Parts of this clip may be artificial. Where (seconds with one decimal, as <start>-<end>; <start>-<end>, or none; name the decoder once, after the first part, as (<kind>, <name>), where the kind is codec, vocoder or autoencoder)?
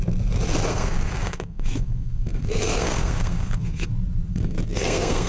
0.7-3.9 (codec, SNAC); 4.3-5.3